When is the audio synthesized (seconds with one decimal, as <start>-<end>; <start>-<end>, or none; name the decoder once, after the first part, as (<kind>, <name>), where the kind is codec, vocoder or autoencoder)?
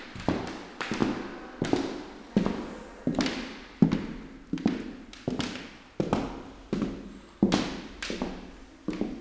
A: none